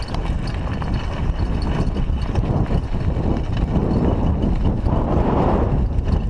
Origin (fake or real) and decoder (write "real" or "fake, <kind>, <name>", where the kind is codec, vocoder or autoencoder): real